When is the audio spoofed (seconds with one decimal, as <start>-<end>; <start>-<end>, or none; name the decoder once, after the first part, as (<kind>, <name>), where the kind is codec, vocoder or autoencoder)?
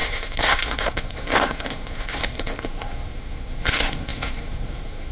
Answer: 0.0-5.1 (codec, SNAC)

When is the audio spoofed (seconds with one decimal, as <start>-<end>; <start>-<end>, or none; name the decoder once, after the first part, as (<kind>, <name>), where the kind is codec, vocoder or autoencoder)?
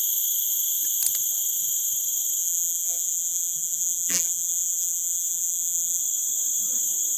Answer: 2.4-6.0 (vocoder, BigVGAN v2)